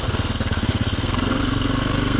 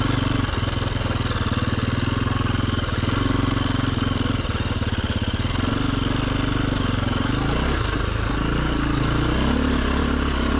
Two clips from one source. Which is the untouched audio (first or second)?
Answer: second